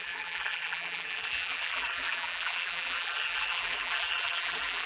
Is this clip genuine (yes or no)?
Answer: no